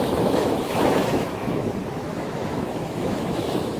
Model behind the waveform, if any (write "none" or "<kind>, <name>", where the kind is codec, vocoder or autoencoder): autoencoder, DAC-VAE